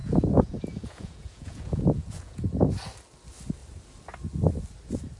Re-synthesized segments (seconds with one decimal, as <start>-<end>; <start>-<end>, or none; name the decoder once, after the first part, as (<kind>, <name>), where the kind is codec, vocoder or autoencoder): 0.0-2.7 (vocoder, Vocos)